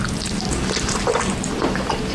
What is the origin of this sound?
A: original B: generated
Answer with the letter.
B